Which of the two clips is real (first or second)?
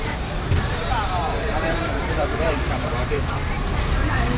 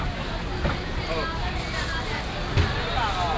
second